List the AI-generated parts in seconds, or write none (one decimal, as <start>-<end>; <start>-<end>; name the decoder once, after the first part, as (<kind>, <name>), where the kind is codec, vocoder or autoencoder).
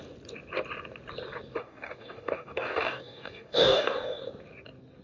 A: 1.6-4.3 (codec, DAC)